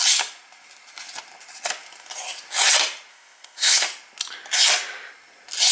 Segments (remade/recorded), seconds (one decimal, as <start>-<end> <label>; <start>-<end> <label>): 0.0-3.1 recorded; 3.1-3.8 remade; 3.8-5.7 recorded